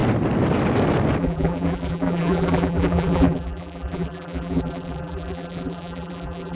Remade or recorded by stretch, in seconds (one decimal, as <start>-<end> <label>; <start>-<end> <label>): 0.0-1.2 recorded; 1.2-6.5 remade